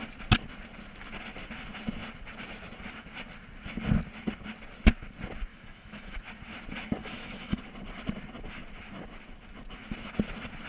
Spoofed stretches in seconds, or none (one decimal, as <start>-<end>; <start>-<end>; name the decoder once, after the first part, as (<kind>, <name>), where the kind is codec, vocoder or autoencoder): 5.5-6.2 (autoencoder, DAC-VAE); 7.0-7.6